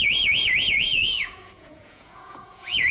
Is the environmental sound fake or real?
fake